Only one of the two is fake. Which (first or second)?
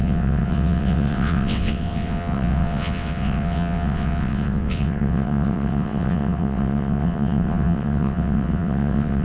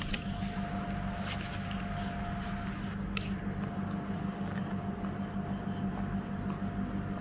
first